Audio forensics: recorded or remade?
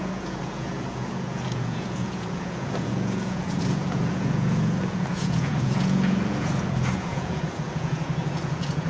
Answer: remade